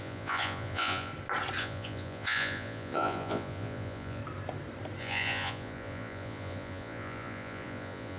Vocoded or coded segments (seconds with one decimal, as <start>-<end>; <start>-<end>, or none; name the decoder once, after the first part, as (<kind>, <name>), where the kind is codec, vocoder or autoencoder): 0.0-1.1 (vocoder, Vocos); 1.6-4.2; 5.0-8.2